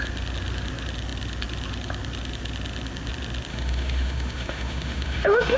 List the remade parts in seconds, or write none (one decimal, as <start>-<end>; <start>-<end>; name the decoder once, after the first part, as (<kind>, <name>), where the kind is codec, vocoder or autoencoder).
3.5-5.6 (autoencoder, DAC-VAE)